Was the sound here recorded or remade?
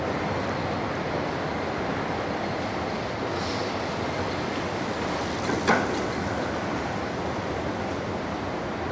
recorded